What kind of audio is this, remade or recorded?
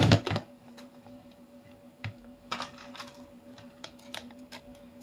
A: remade